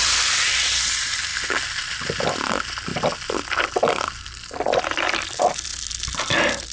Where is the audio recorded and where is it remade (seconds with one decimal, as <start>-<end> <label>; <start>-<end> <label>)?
0.0-1.3 remade; 1.3-2.3 recorded; 2.3-6.7 remade